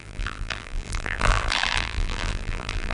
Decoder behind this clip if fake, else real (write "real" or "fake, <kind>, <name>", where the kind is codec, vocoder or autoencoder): fake, vocoder, BigVGAN v2